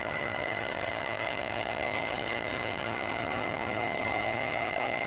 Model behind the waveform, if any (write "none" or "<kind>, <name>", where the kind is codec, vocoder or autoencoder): vocoder, HiFi-GAN